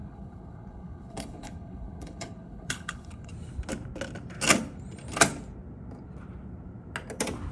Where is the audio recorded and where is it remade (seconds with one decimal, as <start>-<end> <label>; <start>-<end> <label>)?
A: 0.0-3.3 remade; 3.3-7.5 recorded